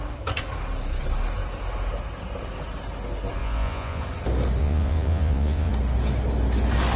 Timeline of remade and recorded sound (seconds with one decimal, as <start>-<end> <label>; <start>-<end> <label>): 0.0-3.4 recorded; 3.4-4.0 remade; 4.0-4.6 recorded; 4.6-5.7 remade; 5.7-7.0 recorded